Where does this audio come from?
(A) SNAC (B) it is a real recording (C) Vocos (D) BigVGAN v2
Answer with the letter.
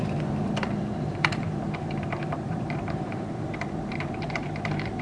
D